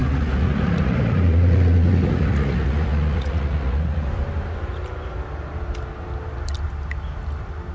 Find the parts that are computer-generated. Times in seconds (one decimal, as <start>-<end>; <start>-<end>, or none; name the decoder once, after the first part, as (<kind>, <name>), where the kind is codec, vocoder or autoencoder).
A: 0.0-4.1 (vocoder, Vocos)